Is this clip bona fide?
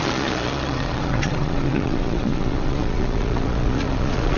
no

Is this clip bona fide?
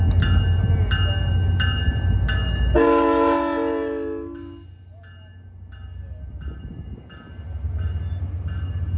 yes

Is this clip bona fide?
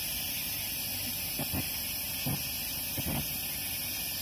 yes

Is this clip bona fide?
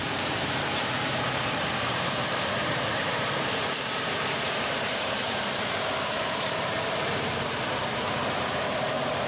no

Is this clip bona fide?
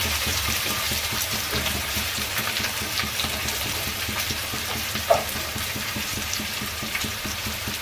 no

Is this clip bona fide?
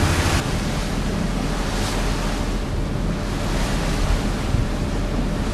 yes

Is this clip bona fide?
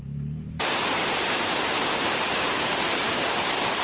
no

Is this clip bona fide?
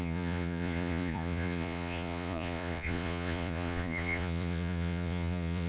no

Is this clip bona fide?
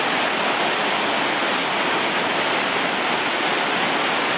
yes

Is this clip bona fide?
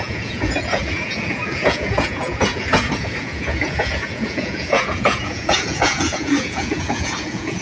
no